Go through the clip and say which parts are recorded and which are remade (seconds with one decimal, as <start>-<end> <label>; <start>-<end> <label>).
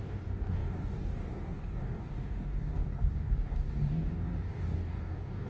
0.0-5.5 remade